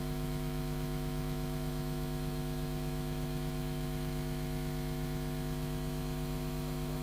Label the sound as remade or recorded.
remade